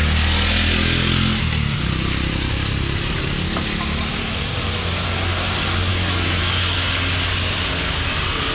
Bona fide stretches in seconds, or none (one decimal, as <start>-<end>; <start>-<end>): 0.0-5.9; 6.4-8.5